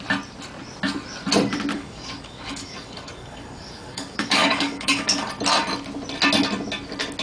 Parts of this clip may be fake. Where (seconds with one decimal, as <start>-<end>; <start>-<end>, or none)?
1.7-5.3